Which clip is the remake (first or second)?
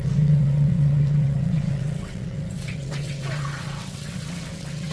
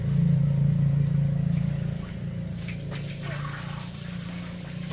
first